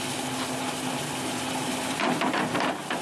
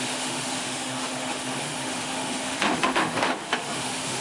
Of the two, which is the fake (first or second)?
second